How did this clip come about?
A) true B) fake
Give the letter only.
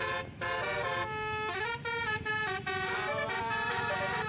B